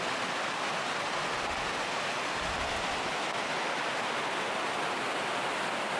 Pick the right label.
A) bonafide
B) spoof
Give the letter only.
A